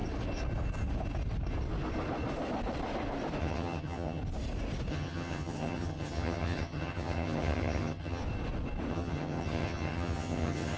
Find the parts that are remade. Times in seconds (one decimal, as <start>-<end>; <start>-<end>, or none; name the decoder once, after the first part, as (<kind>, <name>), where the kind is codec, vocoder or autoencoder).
3.4-4.2 (vocoder, HiFi-GAN); 4.9-8.2; 8.9-10.8